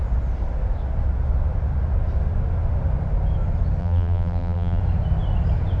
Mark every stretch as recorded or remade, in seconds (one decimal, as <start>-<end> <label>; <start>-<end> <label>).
0.0-3.8 recorded; 3.8-4.8 remade; 4.8-5.8 recorded